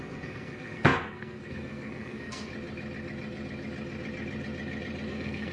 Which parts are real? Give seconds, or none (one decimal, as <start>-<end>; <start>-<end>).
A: 2.5-5.1